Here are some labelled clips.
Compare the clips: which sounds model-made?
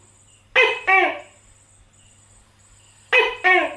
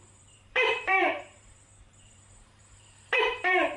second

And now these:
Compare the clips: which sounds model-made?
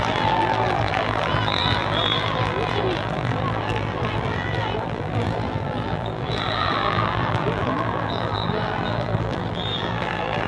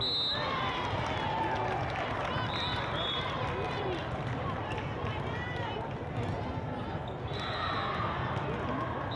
first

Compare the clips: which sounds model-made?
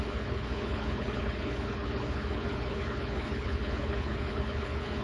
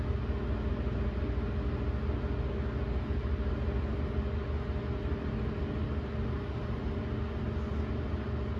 first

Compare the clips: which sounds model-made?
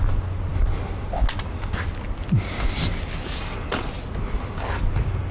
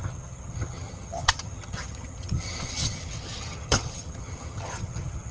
second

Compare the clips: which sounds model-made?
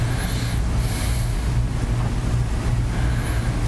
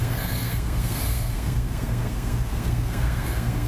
second